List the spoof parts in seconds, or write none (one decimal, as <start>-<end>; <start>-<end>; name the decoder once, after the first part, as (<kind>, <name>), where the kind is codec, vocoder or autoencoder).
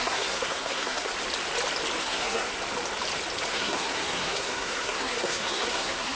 0.0-1.1 (codec, SNAC); 2.0-2.5; 3.5-6.2